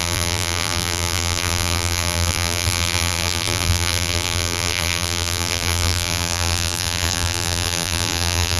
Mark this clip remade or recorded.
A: remade